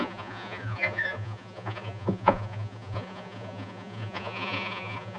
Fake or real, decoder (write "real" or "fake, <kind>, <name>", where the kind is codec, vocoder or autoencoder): fake, vocoder, Vocos